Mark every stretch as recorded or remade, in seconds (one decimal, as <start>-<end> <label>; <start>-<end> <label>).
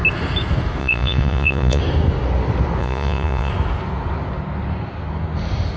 0.0-0.8 recorded; 0.8-1.8 remade; 1.8-2.8 recorded; 2.8-3.5 remade; 3.5-5.8 recorded